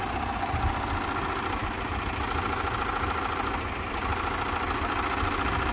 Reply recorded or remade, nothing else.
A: recorded